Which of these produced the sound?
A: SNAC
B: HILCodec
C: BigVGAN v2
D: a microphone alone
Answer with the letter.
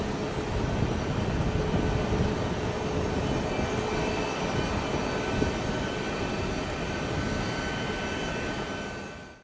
D